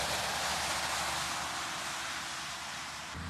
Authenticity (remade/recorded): recorded